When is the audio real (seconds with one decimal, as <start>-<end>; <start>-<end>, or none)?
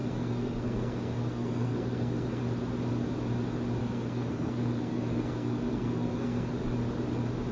2.4-3.8; 6.5-7.5